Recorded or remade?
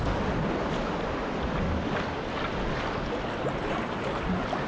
recorded